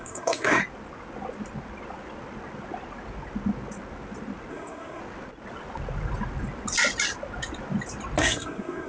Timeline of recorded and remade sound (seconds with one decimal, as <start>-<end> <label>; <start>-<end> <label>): 0.0-0.6 remade; 0.6-4.5 recorded; 4.5-5.0 remade; 5.0-8.2 recorded; 8.2-8.9 remade